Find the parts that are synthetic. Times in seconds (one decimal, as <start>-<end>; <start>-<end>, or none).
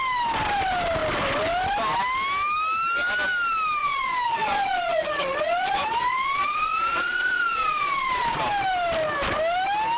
3.8-8.4